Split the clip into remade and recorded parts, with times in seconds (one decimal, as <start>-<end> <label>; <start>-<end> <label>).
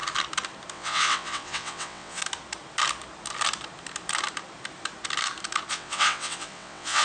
0.0-0.7 recorded; 0.7-2.2 remade; 2.2-5.7 recorded; 5.7-7.0 remade